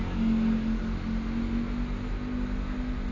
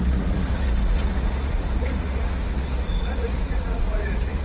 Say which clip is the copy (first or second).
second